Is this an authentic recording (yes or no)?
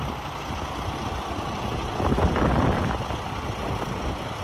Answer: yes